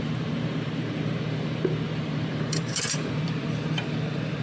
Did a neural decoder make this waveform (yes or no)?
yes